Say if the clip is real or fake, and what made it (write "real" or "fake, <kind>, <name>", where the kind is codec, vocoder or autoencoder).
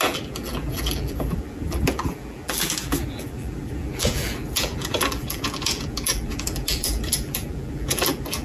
fake, vocoder, BigVGAN v2